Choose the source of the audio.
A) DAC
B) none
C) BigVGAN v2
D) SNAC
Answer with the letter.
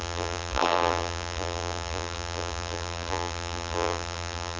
C